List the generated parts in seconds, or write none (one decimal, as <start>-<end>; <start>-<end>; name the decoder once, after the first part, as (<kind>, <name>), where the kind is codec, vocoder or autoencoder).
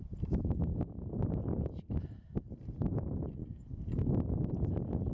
none